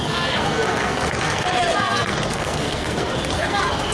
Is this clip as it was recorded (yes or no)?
no